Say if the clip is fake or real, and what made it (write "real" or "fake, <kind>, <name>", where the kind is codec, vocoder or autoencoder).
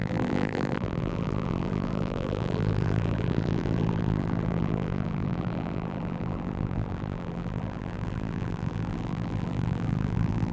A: fake, vocoder, BigVGAN v2